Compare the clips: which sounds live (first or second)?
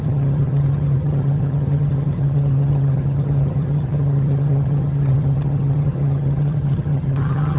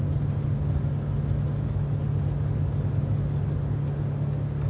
second